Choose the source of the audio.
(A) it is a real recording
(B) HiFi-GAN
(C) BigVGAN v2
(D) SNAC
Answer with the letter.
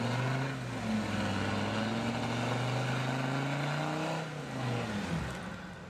A